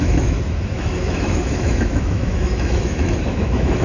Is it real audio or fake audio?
fake